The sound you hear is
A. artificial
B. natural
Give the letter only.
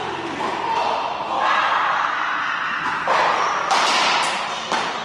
B